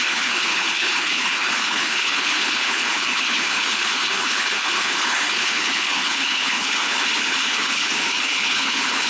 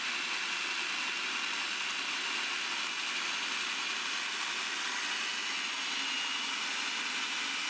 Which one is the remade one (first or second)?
first